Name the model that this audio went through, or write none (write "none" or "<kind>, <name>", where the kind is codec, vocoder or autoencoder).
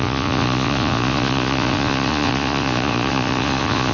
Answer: vocoder, Vocos